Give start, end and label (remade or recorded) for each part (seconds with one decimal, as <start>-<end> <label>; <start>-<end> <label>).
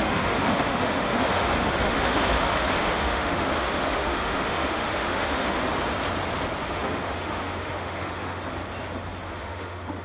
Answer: 0.0-5.6 remade; 5.6-6.6 recorded; 6.6-8.4 remade; 8.4-9.3 recorded; 9.3-10.0 remade